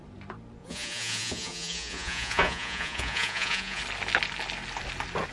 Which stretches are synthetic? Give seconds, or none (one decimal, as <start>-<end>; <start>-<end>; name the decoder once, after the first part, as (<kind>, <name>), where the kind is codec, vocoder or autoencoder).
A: 0.6-3.8 (vocoder, Vocos)